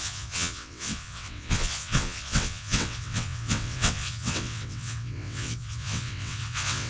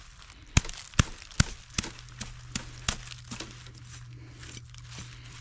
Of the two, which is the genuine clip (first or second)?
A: second